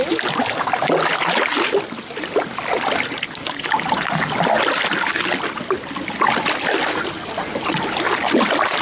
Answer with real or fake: real